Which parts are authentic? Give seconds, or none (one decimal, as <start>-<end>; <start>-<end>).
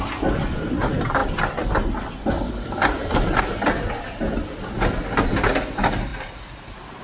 0.0-7.0